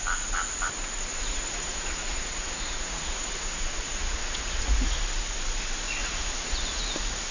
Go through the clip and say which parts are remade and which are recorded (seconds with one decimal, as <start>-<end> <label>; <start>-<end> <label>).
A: 0.0-1.1 recorded; 1.1-5.0 remade; 5.0-6.0 recorded; 6.0-6.8 remade; 6.8-7.3 recorded